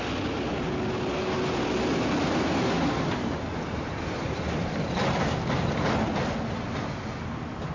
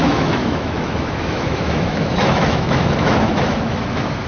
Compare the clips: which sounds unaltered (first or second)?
first